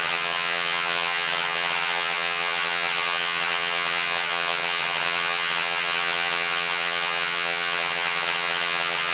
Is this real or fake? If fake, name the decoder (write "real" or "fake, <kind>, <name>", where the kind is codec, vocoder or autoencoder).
fake, vocoder, HiFi-GAN